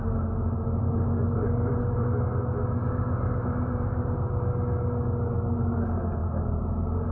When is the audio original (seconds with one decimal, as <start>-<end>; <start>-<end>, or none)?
0.0-7.1